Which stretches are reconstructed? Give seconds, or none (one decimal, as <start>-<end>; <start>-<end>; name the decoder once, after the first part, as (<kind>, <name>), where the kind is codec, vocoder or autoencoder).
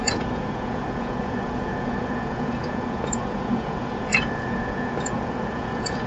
0.0-6.1 (vocoder, Vocos)